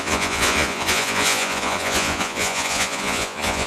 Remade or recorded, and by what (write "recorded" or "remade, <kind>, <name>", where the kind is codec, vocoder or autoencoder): remade, vocoder, Vocos